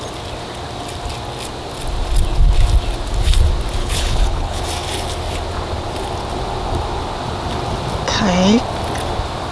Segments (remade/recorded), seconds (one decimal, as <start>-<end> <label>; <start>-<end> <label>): 0.0-3.8 recorded; 3.8-4.6 remade; 4.6-9.5 recorded